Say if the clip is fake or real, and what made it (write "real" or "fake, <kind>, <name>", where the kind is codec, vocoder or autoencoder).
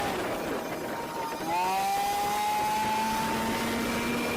real